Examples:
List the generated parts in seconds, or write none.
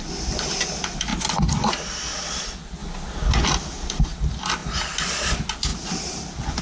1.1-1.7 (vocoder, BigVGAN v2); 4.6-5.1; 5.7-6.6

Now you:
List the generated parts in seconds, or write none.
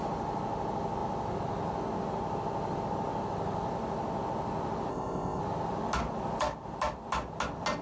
4.9-5.4 (codec, ZipCodec)